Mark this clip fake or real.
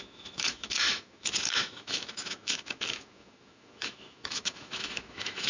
fake